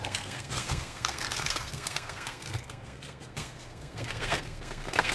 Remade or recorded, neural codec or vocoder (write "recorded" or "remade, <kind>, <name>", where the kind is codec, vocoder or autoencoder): remade, codec, SNAC